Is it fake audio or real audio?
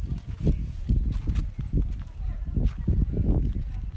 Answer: real